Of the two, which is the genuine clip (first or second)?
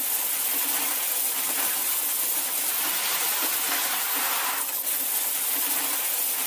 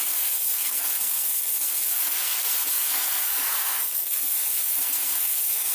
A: first